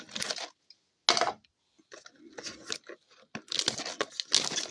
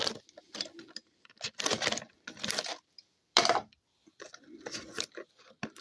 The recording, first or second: first